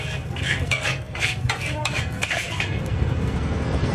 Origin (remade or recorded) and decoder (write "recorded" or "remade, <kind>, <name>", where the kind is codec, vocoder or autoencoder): remade, codec, SNAC